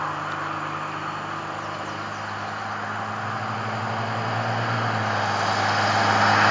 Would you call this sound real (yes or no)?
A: yes